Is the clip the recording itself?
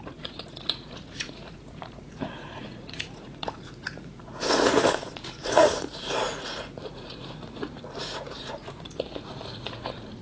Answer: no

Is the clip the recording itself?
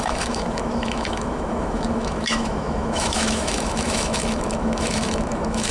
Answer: no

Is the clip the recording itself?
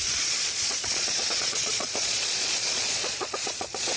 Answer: no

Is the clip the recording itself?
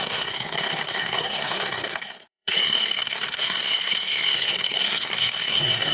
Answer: no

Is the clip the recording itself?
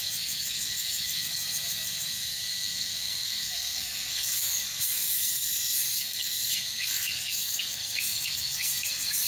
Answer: no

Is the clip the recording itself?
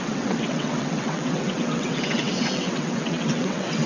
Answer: no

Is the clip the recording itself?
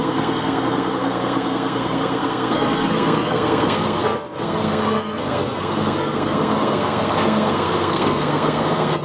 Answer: no